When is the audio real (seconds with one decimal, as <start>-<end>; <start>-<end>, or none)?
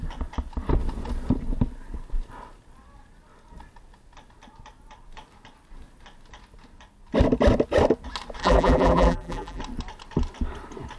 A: 0.0-8.4; 9.6-11.0